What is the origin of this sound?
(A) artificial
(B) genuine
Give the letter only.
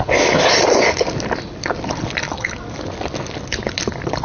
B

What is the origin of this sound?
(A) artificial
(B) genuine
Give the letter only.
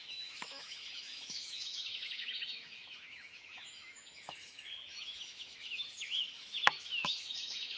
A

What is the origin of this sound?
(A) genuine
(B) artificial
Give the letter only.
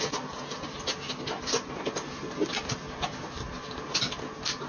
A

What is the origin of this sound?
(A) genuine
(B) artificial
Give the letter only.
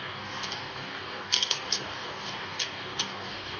B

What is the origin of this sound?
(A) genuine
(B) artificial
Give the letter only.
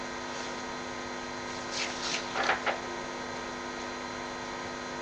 A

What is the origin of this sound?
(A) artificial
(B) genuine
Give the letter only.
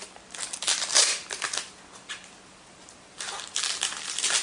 B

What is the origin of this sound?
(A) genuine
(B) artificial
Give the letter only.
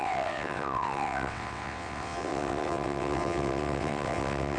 B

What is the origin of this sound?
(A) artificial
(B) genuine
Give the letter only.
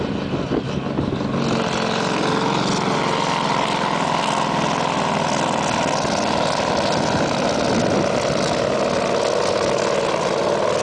B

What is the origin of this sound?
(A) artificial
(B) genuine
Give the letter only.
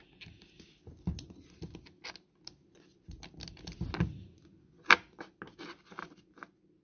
B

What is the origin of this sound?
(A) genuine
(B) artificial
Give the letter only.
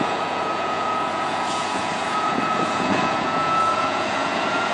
B